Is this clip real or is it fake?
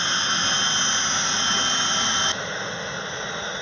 real